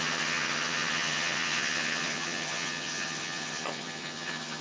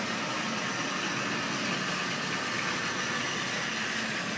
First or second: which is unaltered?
second